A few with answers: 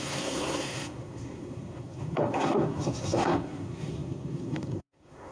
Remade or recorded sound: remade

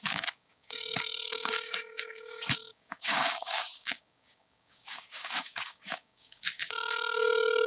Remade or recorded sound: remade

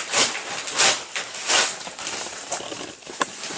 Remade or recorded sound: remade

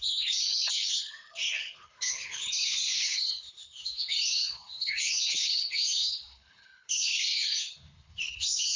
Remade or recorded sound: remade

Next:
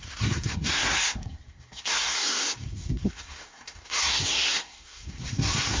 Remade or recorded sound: remade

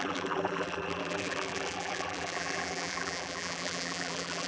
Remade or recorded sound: remade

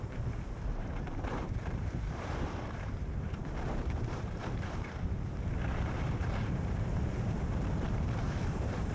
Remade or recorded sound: remade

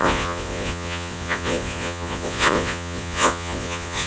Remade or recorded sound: remade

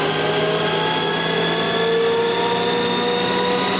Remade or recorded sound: recorded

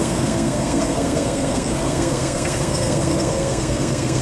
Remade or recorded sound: remade